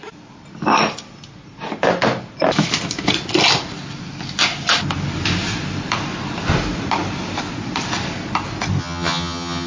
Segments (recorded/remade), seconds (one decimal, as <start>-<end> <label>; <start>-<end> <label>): 0.0-8.8 recorded; 8.8-9.7 remade